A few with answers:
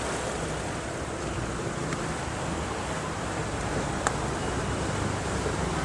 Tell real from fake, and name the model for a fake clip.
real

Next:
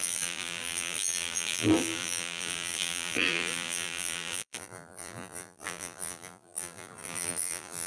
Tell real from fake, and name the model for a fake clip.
fake, vocoder, BigVGAN v2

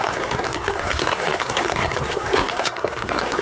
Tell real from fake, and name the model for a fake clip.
fake, codec, SNAC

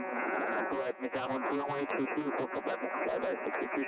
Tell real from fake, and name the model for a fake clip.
fake, vocoder, Vocos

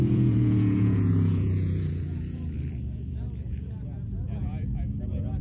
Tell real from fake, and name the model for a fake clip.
fake, vocoder, Vocos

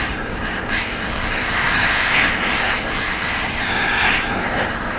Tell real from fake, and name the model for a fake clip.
fake, codec, SNAC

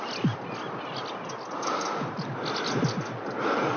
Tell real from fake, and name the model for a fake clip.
real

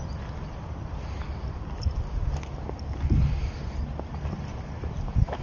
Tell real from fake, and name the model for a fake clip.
real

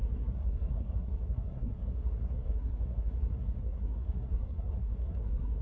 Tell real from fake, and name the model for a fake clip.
fake, codec, SNAC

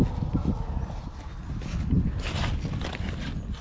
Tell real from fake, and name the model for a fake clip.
real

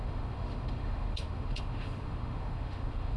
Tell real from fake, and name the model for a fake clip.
fake, autoencoder, DAC-VAE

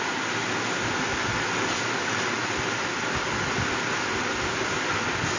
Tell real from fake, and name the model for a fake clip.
real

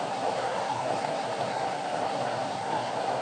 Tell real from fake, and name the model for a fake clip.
fake, codec, SNAC